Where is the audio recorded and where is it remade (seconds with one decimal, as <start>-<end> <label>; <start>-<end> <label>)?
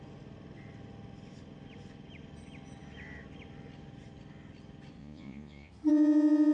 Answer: 0.0-5.0 recorded; 5.0-5.7 remade; 5.7-6.5 recorded